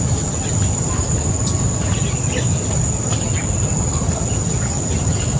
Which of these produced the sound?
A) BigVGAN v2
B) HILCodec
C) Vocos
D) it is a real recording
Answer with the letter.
D